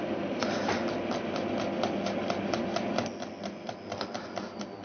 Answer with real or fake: real